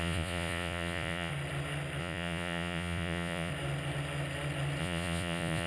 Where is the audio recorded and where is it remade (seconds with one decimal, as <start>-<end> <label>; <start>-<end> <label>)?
0.0-1.3 remade; 1.3-2.0 recorded; 2.0-3.5 remade; 3.5-4.8 recorded; 4.8-5.7 remade